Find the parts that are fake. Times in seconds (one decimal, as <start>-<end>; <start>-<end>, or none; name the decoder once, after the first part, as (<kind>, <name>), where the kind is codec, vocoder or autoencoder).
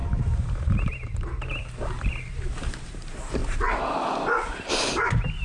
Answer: 0.0-3.4 (vocoder, BigVGAN v2); 4.7-5.4